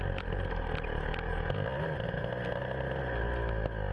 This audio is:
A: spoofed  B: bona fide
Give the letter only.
B